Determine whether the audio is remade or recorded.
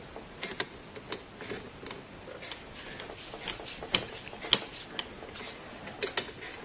recorded